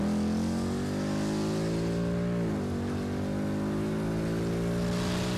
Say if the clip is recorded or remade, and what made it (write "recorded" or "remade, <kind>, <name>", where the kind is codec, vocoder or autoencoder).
recorded